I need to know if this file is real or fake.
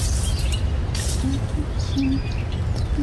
real